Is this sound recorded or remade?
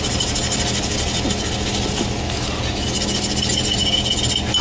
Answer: recorded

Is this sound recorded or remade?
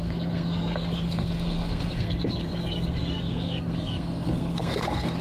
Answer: remade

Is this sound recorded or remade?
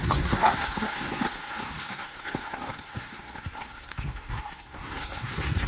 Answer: remade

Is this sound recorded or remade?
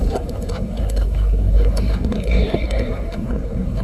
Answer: remade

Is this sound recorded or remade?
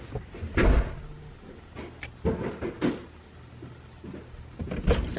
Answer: recorded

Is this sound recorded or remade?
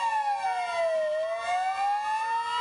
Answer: recorded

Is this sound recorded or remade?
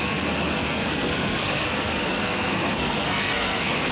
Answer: remade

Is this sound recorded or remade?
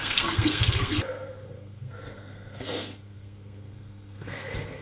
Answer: remade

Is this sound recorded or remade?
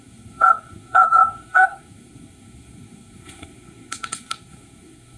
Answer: remade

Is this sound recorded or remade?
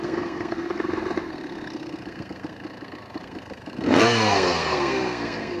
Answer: remade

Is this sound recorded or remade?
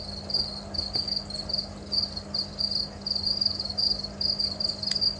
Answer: recorded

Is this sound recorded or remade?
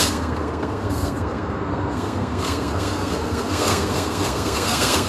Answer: remade